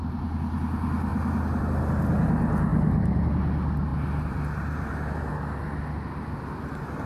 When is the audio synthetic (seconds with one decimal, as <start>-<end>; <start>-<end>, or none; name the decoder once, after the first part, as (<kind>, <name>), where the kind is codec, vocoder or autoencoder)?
2.7-3.3 (vocoder, BigVGAN v2); 3.9-5.3